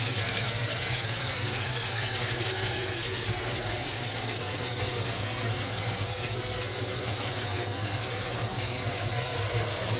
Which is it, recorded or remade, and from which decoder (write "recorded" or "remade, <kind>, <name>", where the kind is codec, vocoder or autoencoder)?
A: remade, codec, SNAC